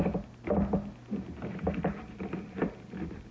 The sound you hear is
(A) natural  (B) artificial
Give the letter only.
A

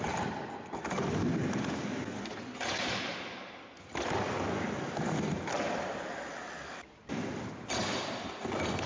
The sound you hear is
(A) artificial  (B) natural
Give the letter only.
B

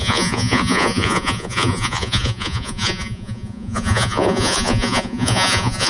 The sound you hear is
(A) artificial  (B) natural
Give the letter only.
A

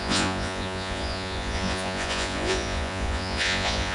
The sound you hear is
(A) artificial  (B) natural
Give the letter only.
A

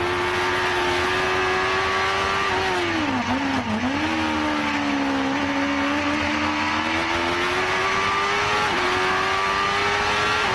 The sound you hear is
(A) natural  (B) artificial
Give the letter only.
A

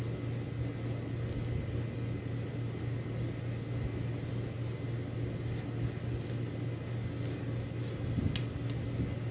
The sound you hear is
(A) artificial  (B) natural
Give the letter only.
B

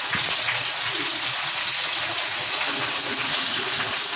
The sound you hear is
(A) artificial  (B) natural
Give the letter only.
A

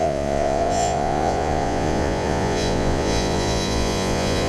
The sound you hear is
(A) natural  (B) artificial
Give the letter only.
B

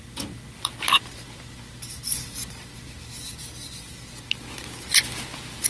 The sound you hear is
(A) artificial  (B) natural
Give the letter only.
B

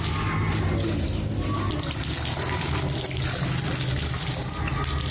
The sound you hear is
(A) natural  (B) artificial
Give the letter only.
A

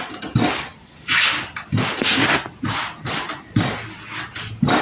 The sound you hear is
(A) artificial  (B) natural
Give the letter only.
B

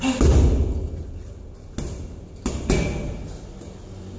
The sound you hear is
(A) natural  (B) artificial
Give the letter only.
A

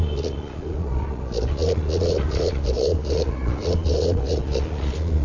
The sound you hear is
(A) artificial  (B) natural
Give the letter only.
A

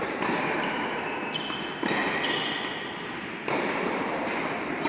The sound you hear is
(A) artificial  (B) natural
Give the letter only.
B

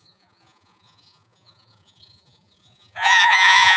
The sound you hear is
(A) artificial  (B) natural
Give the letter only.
A